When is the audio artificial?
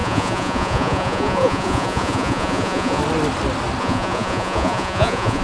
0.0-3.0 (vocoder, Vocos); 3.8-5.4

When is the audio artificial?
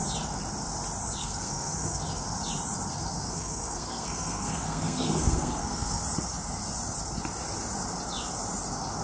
1.2-2.0 (codec, SNAC); 3.1-6.0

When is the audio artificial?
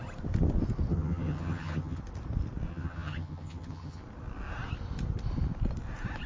0.9-2.0 (vocoder, HiFi-GAN); 2.7-4.0